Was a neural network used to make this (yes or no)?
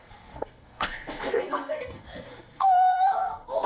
yes